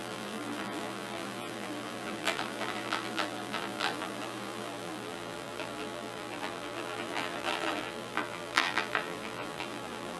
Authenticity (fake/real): fake